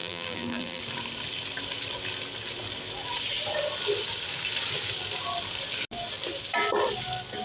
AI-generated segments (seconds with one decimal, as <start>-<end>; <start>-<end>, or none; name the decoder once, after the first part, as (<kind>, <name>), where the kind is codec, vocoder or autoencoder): 0.0-0.8 (vocoder, BigVGAN v2)